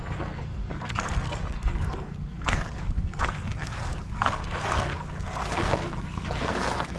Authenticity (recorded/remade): remade